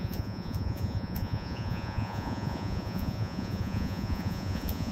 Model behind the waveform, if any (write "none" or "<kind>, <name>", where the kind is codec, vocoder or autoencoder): vocoder, Vocos